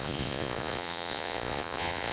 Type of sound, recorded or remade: remade